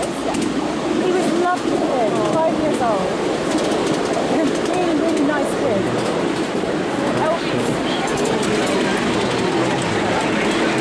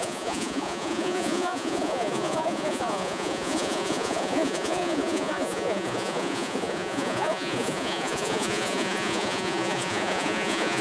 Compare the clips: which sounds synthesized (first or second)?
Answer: second